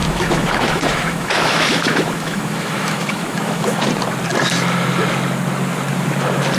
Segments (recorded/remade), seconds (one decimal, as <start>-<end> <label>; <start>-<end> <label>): 0.0-3.9 remade; 3.9-6.6 recorded